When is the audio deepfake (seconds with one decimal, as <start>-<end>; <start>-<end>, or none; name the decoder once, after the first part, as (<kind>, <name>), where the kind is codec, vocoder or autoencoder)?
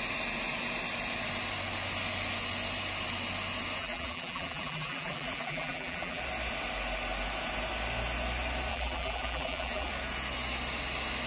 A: 3.8-6.2 (vocoder, BigVGAN v2); 8.7-9.9